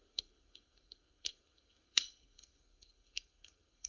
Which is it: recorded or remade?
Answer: remade